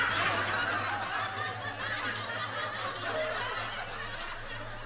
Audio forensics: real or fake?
real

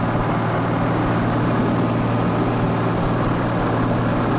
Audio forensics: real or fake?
real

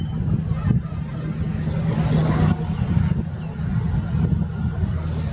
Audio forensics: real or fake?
real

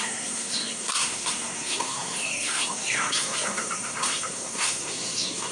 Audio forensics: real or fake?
fake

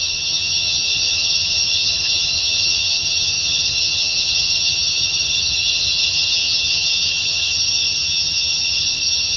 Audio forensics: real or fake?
fake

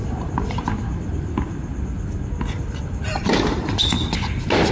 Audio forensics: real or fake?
real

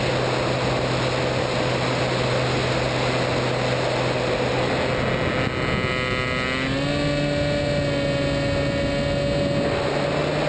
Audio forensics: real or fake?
real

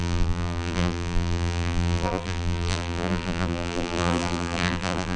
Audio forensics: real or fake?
fake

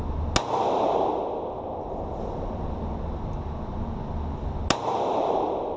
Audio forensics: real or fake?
real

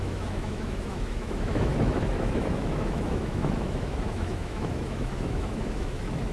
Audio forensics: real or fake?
fake